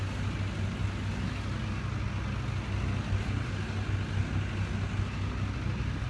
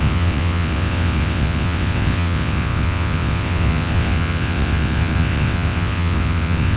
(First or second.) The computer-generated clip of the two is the second